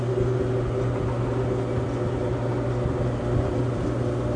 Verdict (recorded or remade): recorded